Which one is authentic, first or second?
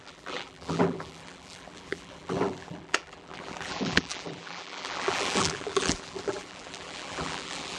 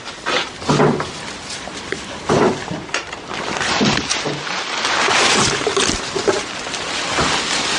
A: second